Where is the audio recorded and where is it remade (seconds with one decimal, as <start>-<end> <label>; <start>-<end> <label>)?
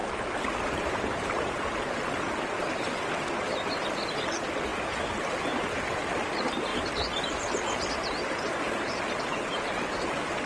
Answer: 0.0-1.6 remade; 1.6-4.7 recorded; 4.7-6.3 remade; 6.3-6.7 recorded; 6.7-10.5 remade